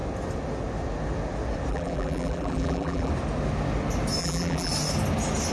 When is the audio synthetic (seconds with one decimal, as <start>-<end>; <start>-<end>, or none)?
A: 1.7-3.1; 4.2-4.7